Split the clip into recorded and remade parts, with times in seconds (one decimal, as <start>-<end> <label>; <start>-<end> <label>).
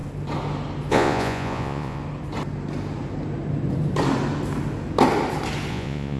0.0-0.9 recorded; 0.9-2.0 remade; 2.0-5.7 recorded; 5.7-6.2 remade